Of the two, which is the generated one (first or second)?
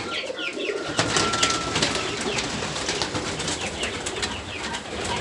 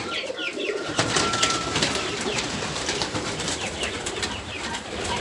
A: second